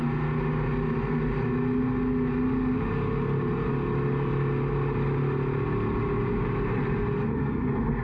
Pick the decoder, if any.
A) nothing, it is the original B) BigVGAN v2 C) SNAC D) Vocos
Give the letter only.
A